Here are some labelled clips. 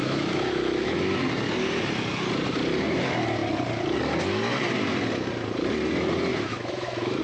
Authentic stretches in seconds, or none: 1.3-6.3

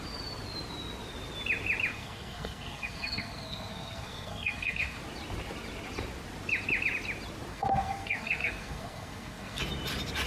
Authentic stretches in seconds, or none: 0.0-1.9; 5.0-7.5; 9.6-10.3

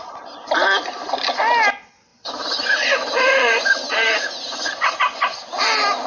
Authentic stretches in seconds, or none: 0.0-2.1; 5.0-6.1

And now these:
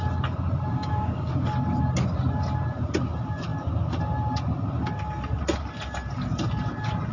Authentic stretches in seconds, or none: 0.0-0.7; 1.3-7.1

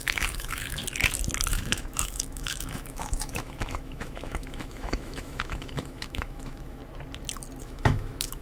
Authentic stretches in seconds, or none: 0.8-1.5; 6.8-7.6

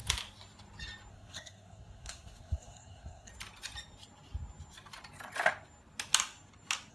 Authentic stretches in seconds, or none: 0.0-1.1; 3.3-6.9

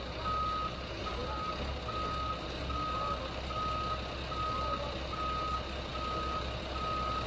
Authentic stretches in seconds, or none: 0.0-7.3